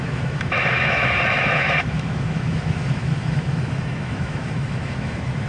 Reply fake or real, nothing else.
fake